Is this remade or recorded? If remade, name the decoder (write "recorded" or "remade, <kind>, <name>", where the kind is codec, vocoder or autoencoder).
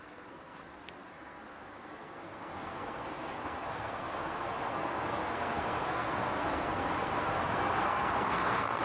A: remade, codec, SNAC